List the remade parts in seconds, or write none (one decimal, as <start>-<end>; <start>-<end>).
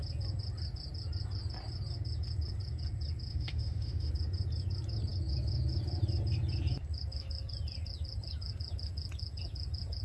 3.3-4.1